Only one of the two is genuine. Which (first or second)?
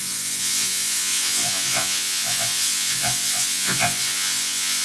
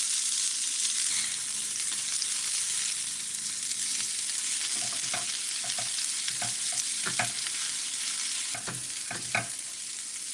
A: second